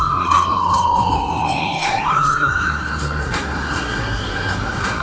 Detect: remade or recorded remade